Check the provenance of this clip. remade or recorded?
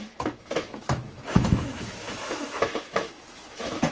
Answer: remade